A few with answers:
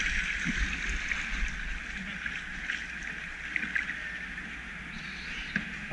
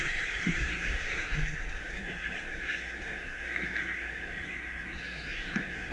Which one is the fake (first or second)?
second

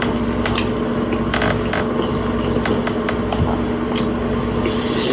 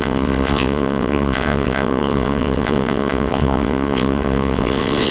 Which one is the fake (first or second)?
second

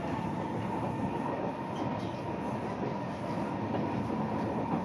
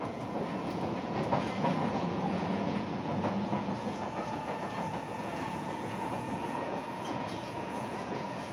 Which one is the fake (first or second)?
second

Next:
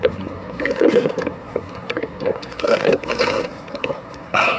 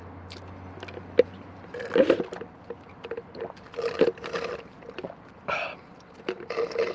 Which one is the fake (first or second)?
first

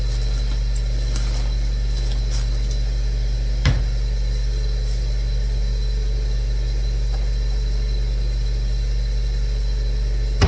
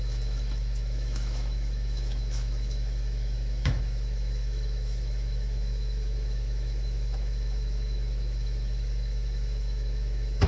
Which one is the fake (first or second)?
second